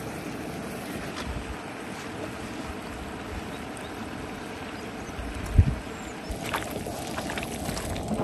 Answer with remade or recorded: recorded